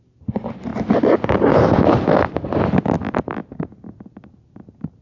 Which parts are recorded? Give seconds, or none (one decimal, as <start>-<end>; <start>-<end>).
0.0-5.0